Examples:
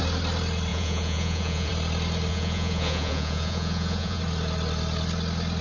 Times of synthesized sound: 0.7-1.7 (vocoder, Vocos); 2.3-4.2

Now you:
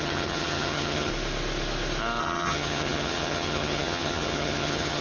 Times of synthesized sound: 0.0-1.1 (vocoder, HiFi-GAN); 2.2-5.0

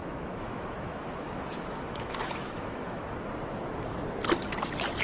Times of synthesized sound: 0.0-3.0 (autoencoder, DAC-VAE)